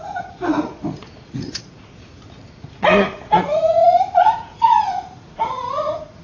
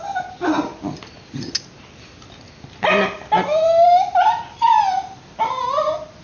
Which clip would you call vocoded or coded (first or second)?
first